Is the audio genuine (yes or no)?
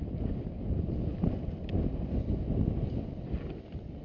yes